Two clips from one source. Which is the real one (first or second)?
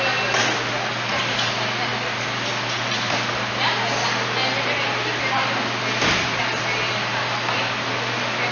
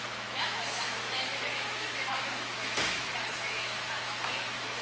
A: first